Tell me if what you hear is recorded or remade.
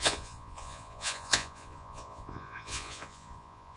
remade